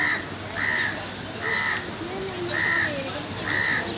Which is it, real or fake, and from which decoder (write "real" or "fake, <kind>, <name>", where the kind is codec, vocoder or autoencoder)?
real